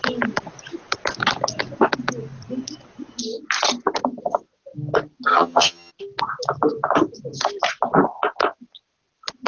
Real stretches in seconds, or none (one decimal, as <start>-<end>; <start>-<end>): 0.0-5.3; 5.9-9.5

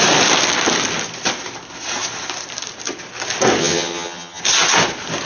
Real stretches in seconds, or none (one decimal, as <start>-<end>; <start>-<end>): 0.0-3.6; 4.4-5.3

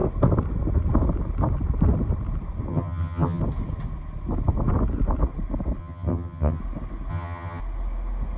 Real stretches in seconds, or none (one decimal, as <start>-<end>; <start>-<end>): 0.0-2.7; 3.4-5.8; 6.6-7.1; 7.6-8.4

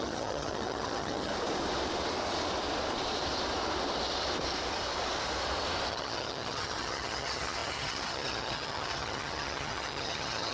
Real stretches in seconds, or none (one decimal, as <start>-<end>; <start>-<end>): 1.3-5.9